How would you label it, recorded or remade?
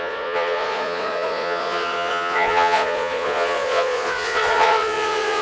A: remade